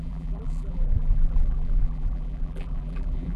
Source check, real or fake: fake